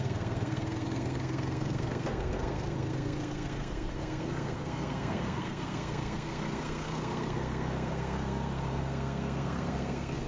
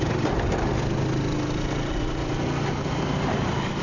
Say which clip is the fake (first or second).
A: first